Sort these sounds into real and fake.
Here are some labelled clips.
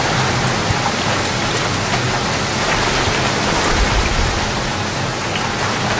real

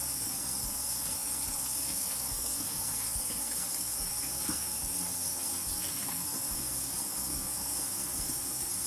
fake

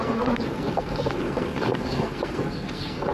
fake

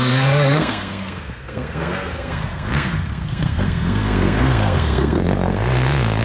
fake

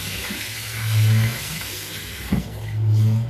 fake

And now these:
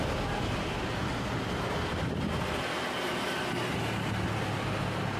real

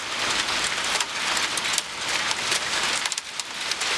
real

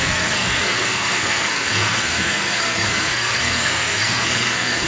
fake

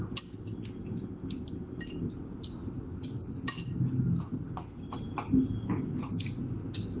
real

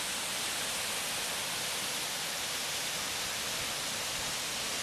real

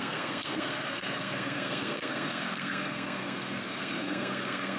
fake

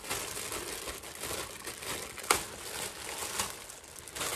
real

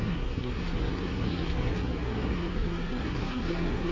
fake